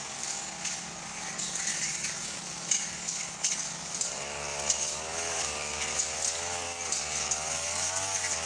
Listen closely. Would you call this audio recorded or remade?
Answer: remade